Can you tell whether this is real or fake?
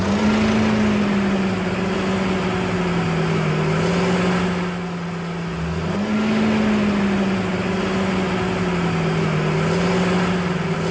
real